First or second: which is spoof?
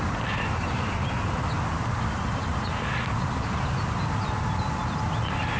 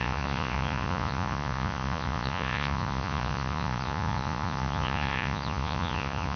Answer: second